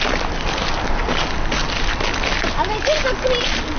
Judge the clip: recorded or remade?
recorded